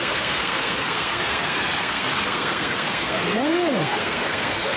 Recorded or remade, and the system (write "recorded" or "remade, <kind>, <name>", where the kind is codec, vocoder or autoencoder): remade, codec, SNAC